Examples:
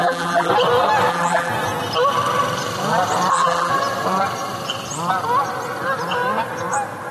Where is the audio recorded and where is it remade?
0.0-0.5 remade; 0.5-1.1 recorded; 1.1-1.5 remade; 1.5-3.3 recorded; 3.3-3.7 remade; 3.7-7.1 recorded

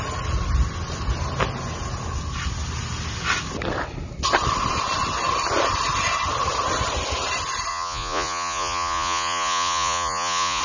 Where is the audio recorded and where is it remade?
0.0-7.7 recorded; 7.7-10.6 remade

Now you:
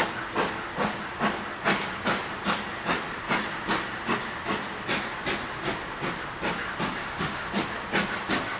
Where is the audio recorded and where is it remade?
0.0-7.0 recorded; 7.0-7.5 remade; 7.5-8.6 recorded

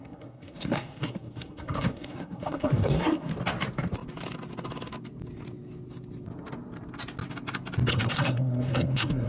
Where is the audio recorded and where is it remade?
0.0-3.3 remade; 3.3-7.9 recorded; 7.9-9.3 remade